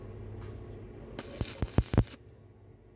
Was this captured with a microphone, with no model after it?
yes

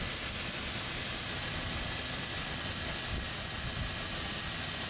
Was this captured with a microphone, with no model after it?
yes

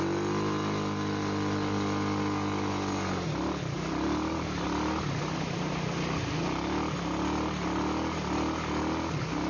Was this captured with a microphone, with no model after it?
yes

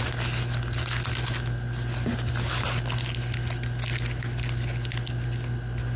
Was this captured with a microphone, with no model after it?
yes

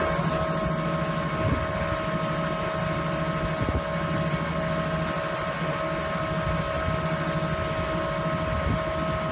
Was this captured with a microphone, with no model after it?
yes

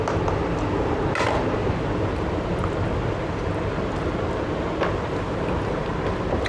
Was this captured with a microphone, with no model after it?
yes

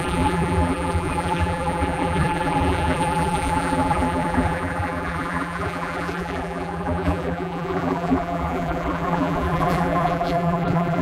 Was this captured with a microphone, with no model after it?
no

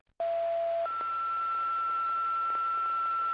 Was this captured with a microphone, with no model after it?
yes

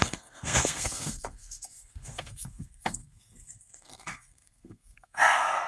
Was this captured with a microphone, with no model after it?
no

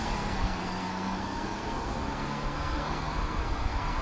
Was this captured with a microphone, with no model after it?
no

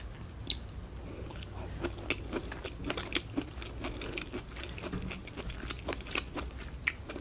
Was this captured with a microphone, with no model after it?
yes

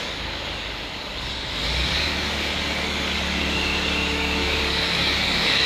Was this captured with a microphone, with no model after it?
no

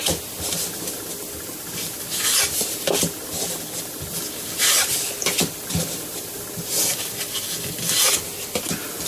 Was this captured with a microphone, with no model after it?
yes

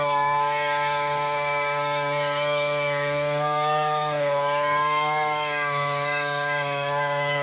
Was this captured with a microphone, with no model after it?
no